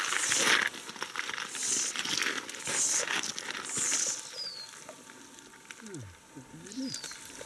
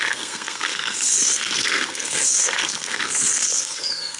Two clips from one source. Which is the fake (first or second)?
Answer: second